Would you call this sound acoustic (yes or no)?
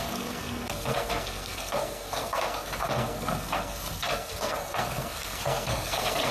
no